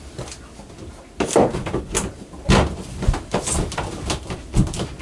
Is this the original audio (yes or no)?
yes